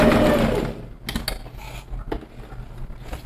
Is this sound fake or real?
real